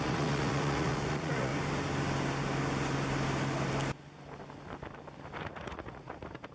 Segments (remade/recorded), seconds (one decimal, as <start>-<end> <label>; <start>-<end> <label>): 0.0-1.5 remade; 1.5-5.4 recorded; 5.4-6.5 remade